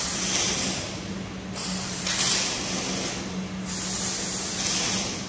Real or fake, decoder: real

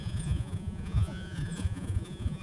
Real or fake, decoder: fake, vocoder, Vocos